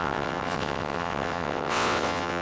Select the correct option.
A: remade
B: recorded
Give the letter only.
A